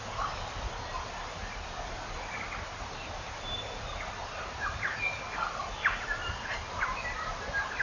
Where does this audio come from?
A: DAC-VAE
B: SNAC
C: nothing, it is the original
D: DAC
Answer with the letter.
C